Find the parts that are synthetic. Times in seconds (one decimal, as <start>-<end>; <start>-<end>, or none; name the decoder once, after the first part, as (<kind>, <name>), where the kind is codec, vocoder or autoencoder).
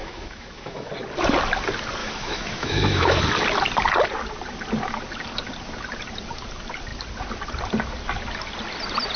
0.0-0.9 (autoencoder, DAC-VAE); 2.0-3.2